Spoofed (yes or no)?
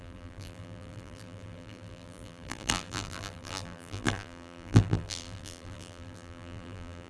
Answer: yes